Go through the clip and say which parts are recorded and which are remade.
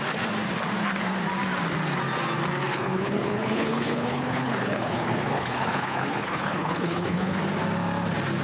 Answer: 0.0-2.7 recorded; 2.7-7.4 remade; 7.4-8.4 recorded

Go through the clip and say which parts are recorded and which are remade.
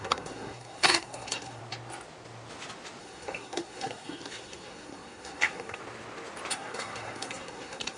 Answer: 0.0-1.6 remade; 1.6-3.0 recorded; 3.0-5.8 remade; 5.8-6.5 recorded; 6.5-8.0 remade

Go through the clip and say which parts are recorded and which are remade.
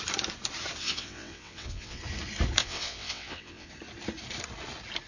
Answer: 0.0-0.8 recorded; 0.8-2.0 remade; 2.0-2.6 recorded; 2.6-3.7 remade; 3.7-5.1 recorded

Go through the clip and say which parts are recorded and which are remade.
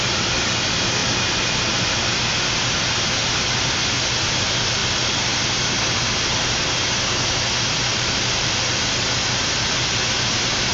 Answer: 0.0-4.8 recorded; 4.8-5.4 remade; 5.4-7.9 recorded; 7.9-8.8 remade; 8.8-10.7 recorded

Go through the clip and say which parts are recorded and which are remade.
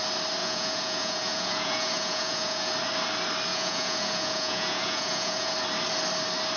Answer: 0.0-0.4 recorded; 0.4-2.7 remade; 2.7-3.5 recorded; 3.5-5.5 remade; 5.5-6.6 recorded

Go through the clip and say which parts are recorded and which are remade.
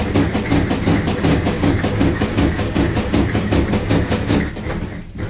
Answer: 0.0-1.3 recorded; 1.3-4.5 remade; 4.5-5.3 recorded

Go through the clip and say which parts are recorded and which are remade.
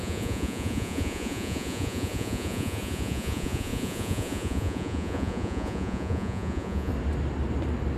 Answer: 0.0-6.9 remade; 6.9-8.0 recorded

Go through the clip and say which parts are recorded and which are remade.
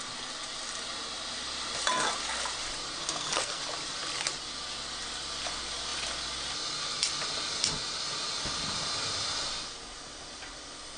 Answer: 0.0-3.0 recorded; 3.0-3.6 remade; 3.6-11.0 recorded